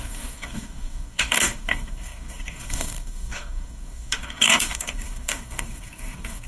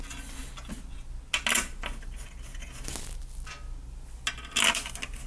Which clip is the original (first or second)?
second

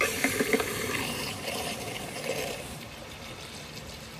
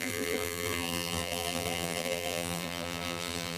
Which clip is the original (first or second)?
first